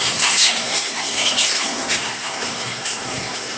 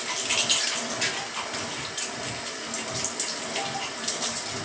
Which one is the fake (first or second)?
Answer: first